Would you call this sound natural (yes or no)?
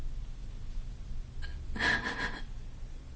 yes